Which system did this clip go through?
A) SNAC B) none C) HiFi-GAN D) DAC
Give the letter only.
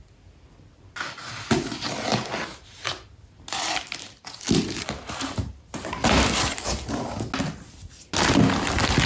B